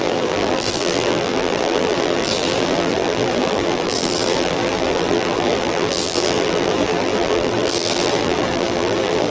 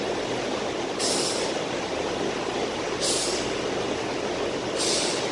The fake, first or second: first